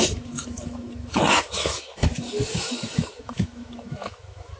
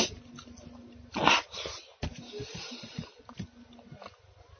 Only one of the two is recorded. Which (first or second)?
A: second